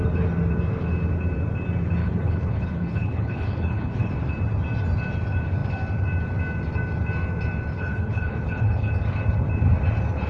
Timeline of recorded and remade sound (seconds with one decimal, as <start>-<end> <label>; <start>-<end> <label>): 0.0-2.0 recorded; 2.0-4.1 remade; 4.1-7.7 recorded; 7.7-8.9 remade; 8.9-10.3 recorded